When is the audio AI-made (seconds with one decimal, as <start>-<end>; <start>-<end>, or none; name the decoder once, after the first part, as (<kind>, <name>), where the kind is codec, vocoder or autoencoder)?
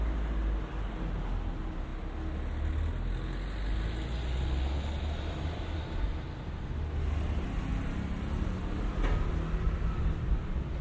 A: none